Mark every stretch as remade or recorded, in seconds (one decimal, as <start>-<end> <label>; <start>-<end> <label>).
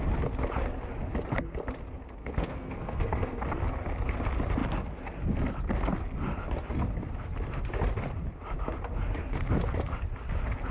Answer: 0.0-2.2 recorded; 2.2-3.4 remade; 3.4-10.7 recorded